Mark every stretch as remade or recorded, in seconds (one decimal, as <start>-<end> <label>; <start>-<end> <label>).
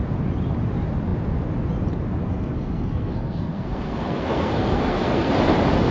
0.0-2.2 recorded; 2.2-5.3 remade; 5.3-5.9 recorded